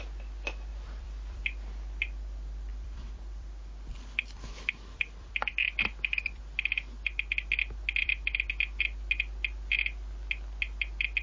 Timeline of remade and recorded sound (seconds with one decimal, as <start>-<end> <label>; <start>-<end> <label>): 0.0-0.7 recorded; 0.7-1.4 remade; 1.4-2.7 recorded; 2.7-6.4 remade; 6.4-8.0 recorded; 8.0-8.5 remade; 8.5-11.2 recorded